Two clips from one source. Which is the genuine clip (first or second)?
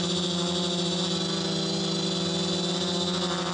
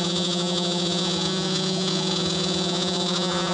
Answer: first